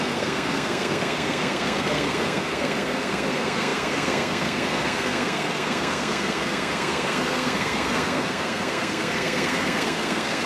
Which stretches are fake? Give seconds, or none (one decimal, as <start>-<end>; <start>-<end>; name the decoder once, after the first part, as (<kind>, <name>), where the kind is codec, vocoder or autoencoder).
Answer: 0.0-10.5 (codec, SNAC)